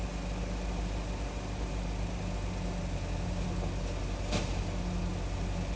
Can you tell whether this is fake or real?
real